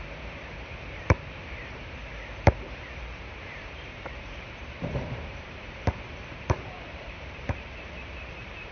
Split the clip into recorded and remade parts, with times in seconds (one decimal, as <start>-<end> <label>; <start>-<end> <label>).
0.0-2.0 remade; 2.0-2.8 recorded; 2.8-8.7 remade